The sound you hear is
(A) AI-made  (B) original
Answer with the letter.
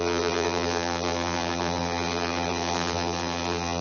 A